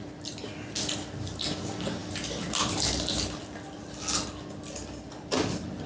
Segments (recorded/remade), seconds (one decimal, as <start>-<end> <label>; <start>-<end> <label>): 0.0-5.9 recorded